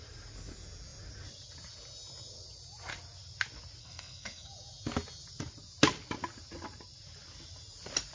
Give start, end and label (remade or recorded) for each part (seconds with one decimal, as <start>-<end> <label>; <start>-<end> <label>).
0.0-3.8 recorded; 3.8-4.5 remade; 4.5-8.1 recorded

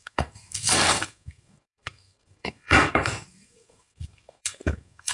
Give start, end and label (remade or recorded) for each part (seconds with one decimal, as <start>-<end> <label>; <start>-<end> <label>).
0.0-5.1 remade

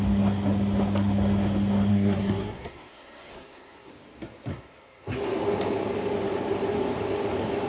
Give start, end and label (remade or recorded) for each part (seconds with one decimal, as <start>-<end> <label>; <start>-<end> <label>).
0.0-1.9 recorded; 1.9-3.9 remade; 3.9-4.5 recorded; 4.5-5.1 remade; 5.1-7.7 recorded

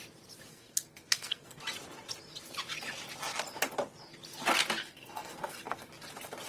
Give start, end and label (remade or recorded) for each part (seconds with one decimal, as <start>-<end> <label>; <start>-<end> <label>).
0.0-0.5 recorded; 0.5-1.6 remade; 1.6-4.8 recorded; 4.8-5.9 remade; 5.9-6.5 recorded

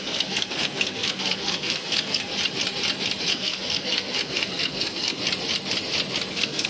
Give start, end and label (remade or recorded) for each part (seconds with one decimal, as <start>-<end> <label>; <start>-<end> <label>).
0.0-2.3 remade; 2.3-3.3 recorded; 3.3-5.2 remade; 5.2-6.3 recorded; 6.3-6.7 remade